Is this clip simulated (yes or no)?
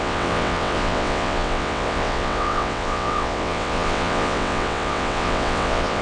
yes